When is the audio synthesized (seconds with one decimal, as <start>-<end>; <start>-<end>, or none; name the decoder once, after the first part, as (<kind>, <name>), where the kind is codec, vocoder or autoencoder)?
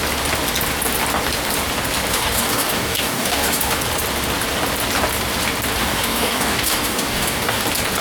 2.1-3.8 (codec, DAC); 5.8-7.6